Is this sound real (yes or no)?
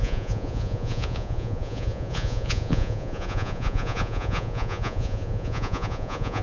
no